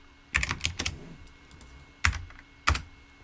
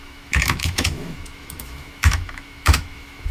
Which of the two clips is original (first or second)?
first